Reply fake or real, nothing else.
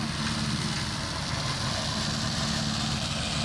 real